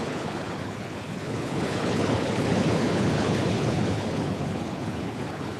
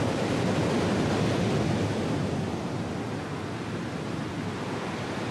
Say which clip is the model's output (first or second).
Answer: first